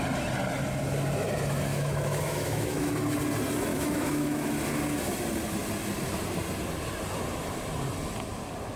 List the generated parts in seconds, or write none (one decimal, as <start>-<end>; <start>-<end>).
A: 1.7-2.9; 3.7-4.5